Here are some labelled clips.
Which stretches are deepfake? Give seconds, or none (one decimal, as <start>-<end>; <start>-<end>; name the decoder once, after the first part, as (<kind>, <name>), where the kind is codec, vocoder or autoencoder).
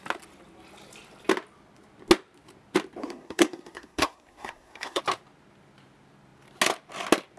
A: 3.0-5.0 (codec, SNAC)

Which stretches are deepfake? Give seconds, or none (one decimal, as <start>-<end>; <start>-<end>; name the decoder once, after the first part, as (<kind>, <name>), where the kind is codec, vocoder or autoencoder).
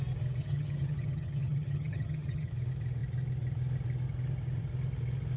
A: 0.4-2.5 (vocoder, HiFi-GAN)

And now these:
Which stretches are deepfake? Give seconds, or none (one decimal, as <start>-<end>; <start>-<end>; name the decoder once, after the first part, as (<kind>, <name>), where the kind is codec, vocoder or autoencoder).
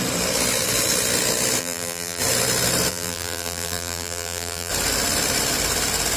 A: 1.6-2.2 (vocoder, BigVGAN v2); 2.9-4.7